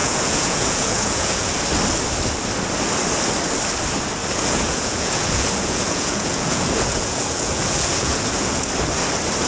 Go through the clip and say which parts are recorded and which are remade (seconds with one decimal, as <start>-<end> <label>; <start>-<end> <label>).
0.0-1.5 remade; 1.5-4.2 recorded; 4.2-8.7 remade; 8.7-9.5 recorded